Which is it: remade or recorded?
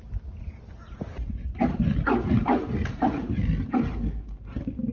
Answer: recorded